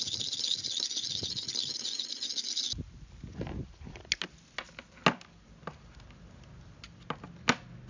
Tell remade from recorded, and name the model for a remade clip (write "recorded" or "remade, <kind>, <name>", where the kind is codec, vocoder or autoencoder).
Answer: recorded